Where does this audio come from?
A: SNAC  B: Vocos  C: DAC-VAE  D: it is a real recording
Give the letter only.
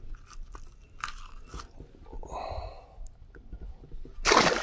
D